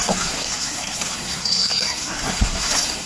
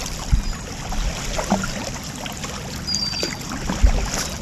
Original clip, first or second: second